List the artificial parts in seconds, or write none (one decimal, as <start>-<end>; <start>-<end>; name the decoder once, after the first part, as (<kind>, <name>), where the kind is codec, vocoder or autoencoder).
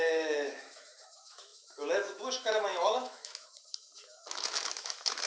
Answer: 0.0-5.3 (autoencoder, DAC-VAE)